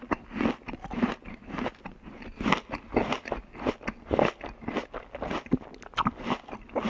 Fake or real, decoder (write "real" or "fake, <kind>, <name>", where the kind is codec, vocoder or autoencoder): real